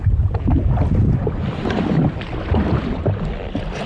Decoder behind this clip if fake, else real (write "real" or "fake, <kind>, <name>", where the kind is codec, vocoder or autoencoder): fake, vocoder, BigVGAN v2